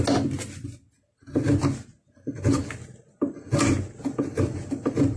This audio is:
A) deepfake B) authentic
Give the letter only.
B